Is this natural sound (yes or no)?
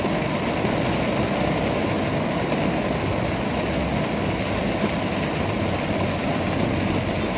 yes